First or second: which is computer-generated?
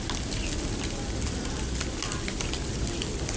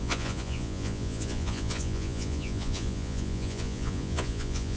second